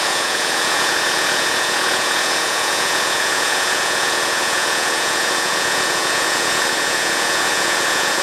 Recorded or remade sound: remade